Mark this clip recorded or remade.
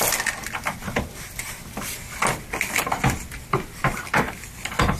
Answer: recorded